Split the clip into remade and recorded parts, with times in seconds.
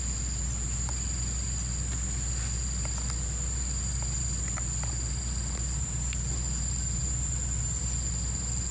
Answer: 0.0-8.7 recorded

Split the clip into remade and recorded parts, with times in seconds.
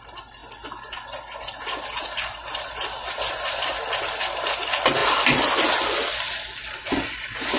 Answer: 0.0-7.6 recorded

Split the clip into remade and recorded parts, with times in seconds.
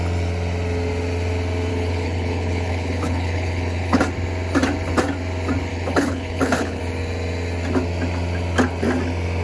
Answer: 0.0-1.7 recorded; 1.7-4.0 remade; 4.0-5.7 recorded; 5.7-6.8 remade; 6.8-9.4 recorded